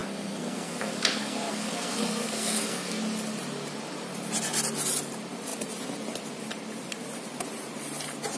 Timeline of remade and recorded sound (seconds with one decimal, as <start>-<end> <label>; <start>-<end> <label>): 0.0-3.0 remade; 3.0-8.4 recorded